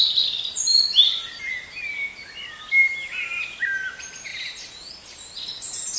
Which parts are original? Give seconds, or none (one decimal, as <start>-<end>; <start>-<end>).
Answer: 0.0-0.7; 1.4-4.3; 5.4-6.0